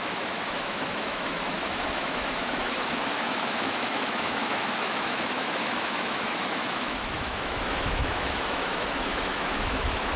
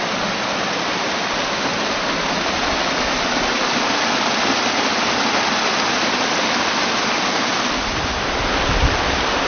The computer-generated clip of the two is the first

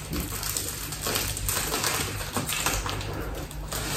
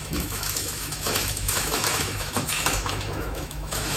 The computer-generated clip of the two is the second